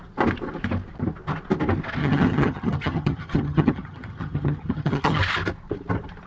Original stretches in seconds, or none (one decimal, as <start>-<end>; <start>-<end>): 0.0-2.0; 5.2-6.3